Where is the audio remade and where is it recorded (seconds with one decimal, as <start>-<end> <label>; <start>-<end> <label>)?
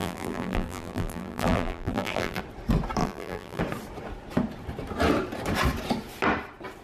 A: 0.0-2.4 remade; 2.4-3.0 recorded; 3.0-3.6 remade; 3.6-6.8 recorded